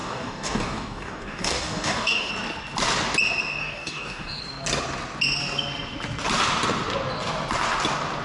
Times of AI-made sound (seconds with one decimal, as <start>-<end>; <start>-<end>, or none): 0.0-2.3; 3.6-4.4